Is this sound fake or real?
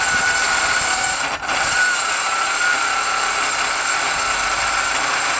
real